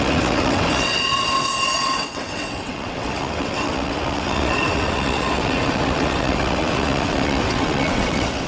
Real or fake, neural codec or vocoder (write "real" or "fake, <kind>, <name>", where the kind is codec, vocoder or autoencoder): fake, vocoder, WaveNeXt